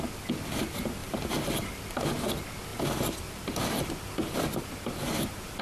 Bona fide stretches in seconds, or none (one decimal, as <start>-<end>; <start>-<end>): 0.0-1.0; 2.0-2.7; 4.6-5.6